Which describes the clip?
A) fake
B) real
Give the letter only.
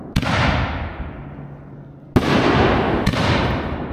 B